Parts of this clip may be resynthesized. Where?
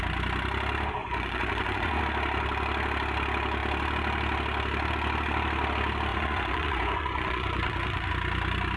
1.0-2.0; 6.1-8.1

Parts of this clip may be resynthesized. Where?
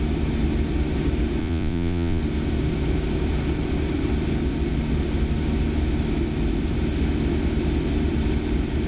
1.4-2.2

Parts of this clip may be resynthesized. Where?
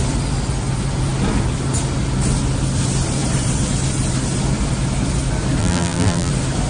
5.6-6.3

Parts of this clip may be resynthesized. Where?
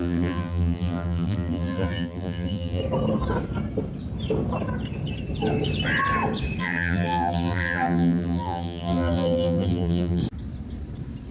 0.0-2.8; 6.6-10.2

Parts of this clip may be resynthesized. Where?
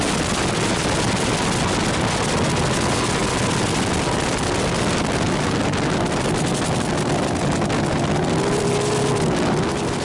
none